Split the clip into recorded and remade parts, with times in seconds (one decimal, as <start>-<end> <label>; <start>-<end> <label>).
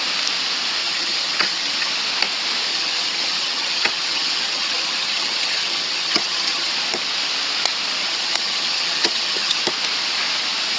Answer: 0.0-0.8 recorded; 0.8-1.9 remade; 1.9-2.7 recorded; 2.7-6.7 remade; 6.7-8.0 recorded; 8.0-9.6 remade; 9.6-10.8 recorded